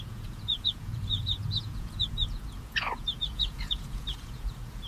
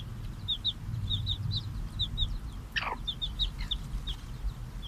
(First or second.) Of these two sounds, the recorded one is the second